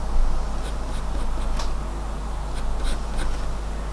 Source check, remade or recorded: recorded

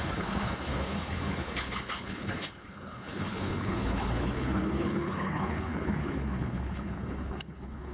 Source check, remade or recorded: remade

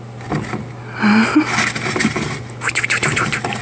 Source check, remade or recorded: recorded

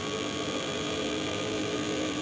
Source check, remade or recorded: remade